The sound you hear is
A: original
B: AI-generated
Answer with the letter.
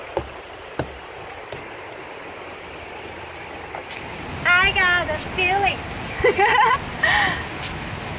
A